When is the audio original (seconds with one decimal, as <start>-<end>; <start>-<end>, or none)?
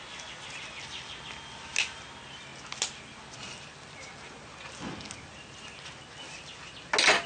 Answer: 0.0-7.3